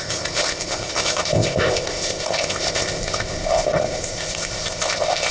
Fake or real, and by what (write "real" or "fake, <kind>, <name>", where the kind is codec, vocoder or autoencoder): fake, codec, ZipCodec